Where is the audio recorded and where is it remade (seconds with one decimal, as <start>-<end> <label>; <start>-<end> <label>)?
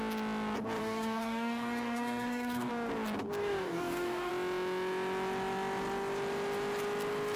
0.0-0.8 recorded; 0.8-2.7 remade; 2.7-3.4 recorded; 3.4-4.3 remade; 4.3-7.4 recorded